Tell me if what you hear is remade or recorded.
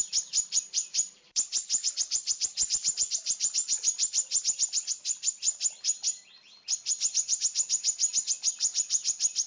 remade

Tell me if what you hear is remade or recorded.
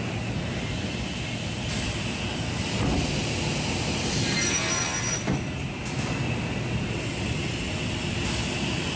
recorded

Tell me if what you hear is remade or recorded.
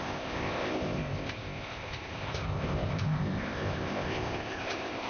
remade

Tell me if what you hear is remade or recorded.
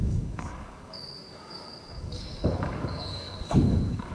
remade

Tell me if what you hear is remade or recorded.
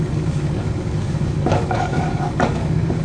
remade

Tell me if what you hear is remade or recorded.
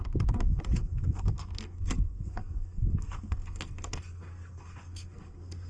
remade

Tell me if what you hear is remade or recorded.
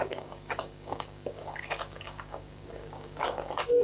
remade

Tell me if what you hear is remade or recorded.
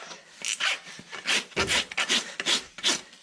recorded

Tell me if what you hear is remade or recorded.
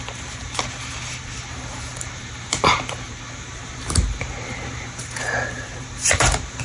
remade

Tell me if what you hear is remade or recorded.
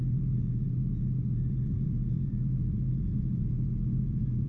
remade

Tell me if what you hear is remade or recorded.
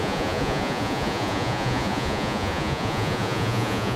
remade